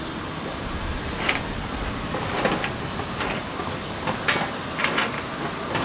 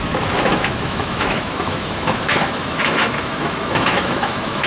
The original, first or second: first